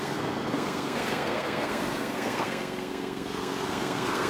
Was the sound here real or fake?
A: fake